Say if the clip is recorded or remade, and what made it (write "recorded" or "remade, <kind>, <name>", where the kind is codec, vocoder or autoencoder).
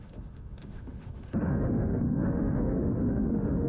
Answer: remade, autoencoder, DAC-VAE